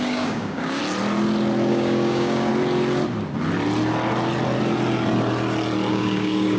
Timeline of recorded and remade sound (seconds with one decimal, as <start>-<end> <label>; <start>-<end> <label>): 0.0-0.8 remade; 0.8-1.7 recorded; 1.7-2.5 remade; 2.5-5.9 recorded; 5.9-6.6 remade